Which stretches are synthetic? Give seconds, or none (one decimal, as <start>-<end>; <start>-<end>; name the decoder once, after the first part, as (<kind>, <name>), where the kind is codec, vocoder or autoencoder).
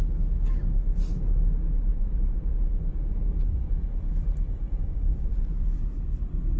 1.9-2.5 (vocoder, BigVGAN v2); 4.9-5.5